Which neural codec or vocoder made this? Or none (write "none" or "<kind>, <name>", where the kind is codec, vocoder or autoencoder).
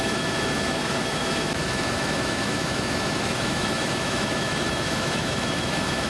autoencoder, DAC-VAE